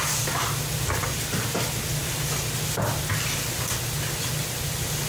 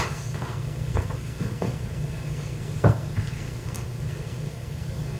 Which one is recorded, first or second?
first